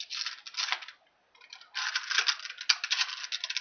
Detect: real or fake real